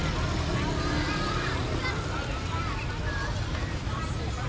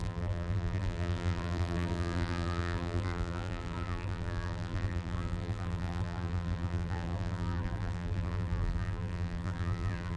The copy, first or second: second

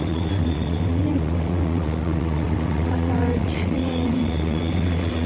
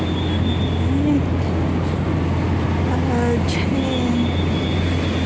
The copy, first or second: first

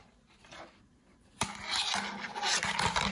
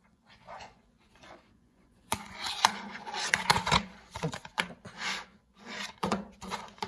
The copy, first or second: second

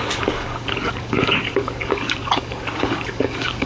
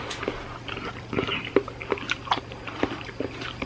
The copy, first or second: first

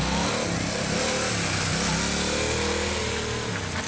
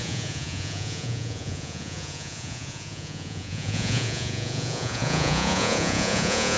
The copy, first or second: second